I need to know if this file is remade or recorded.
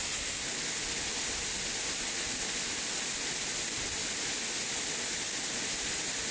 recorded